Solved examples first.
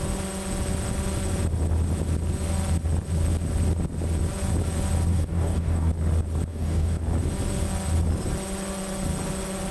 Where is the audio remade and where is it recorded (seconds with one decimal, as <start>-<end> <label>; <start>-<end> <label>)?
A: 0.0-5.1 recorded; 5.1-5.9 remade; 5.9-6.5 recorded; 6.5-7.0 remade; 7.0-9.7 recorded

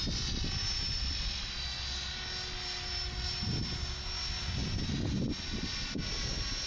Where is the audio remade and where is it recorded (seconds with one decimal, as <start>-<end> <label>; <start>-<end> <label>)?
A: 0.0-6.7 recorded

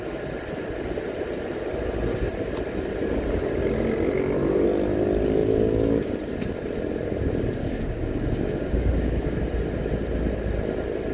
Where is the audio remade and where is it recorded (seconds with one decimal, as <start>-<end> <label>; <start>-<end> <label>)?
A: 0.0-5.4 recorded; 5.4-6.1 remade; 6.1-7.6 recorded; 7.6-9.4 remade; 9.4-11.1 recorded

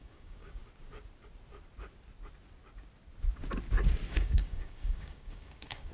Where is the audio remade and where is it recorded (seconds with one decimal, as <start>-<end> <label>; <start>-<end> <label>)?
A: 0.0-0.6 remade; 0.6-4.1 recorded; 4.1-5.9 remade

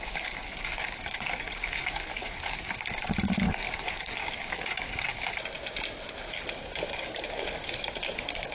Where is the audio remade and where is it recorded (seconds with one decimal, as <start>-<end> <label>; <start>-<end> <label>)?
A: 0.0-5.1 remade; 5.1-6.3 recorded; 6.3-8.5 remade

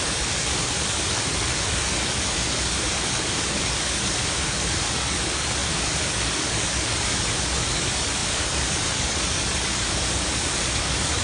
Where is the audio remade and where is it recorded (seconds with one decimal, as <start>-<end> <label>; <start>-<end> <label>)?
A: 0.0-11.2 remade